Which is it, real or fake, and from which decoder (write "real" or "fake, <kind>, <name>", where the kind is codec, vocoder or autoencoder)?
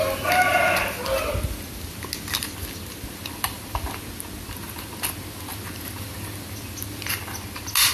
real